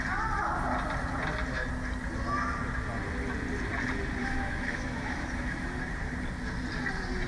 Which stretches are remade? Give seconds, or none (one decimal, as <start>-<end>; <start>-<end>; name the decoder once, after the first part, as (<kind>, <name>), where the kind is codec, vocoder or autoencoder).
4.2-5.9 (autoencoder, DAC-VAE)